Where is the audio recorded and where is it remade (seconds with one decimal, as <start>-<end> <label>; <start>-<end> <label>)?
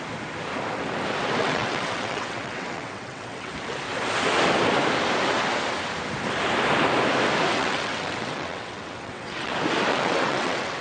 0.0-1.4 recorded; 1.4-3.5 remade; 3.5-7.5 recorded; 7.5-9.5 remade; 9.5-9.9 recorded; 9.9-10.8 remade